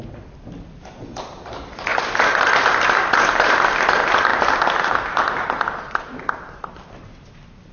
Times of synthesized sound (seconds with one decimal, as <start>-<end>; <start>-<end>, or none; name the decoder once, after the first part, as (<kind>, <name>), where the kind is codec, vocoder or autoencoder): 0.0-7.7 (vocoder, BigVGAN v2)